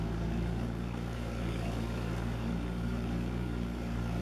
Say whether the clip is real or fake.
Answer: fake